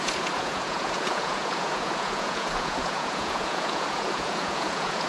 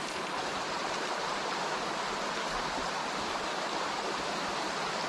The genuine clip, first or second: second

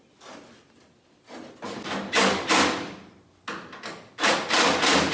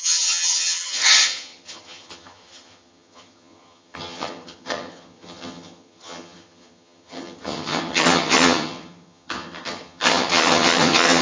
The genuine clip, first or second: first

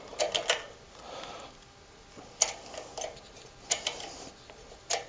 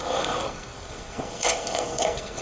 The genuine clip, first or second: first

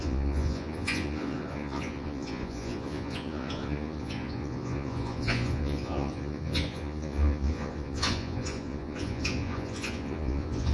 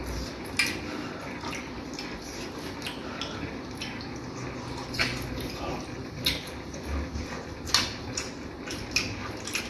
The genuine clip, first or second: second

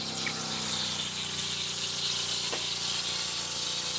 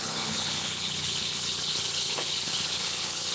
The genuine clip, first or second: first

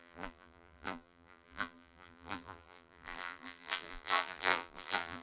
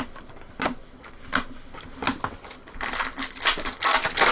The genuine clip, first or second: second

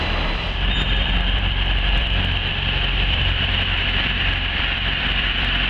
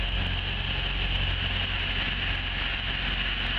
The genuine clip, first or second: second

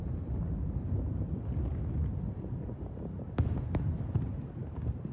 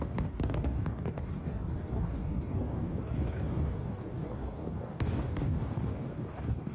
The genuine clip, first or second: first